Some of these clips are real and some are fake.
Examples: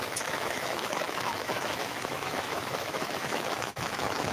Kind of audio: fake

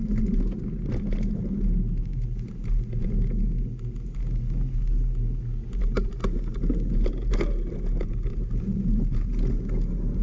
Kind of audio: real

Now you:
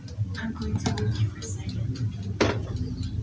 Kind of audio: real